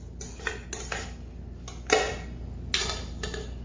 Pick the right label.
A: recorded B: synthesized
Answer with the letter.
A